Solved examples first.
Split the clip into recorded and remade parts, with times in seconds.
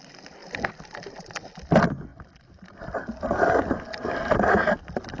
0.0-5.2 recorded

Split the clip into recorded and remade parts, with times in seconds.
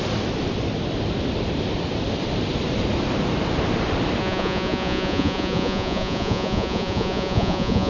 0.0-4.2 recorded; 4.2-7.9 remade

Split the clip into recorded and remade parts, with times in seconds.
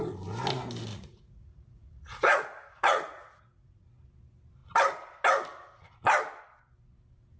0.0-0.9 recorded; 0.9-3.9 remade; 3.9-7.4 recorded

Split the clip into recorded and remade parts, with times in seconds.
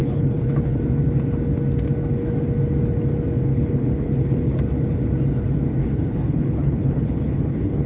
0.0-0.8 remade; 0.8-3.5 recorded; 3.5-4.6 remade; 4.6-5.8 recorded; 5.8-7.9 remade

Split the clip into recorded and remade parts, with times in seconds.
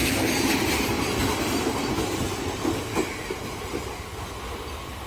0.0-0.5 remade; 0.5-1.2 recorded; 1.2-4.3 remade; 4.3-5.1 recorded